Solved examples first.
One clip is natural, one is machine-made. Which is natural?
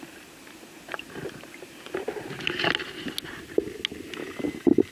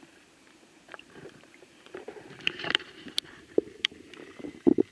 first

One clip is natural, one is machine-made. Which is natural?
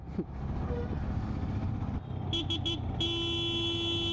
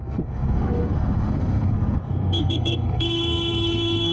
first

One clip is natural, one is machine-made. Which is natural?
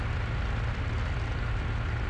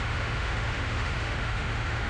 first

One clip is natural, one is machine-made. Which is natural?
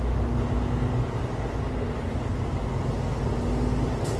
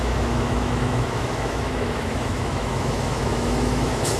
first